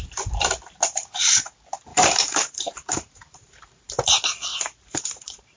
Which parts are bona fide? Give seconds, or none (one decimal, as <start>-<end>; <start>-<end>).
0.0-1.9; 3.9-4.5